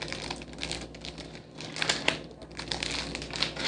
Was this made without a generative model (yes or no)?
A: yes